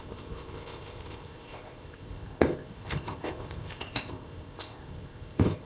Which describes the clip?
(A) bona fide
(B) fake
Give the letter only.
B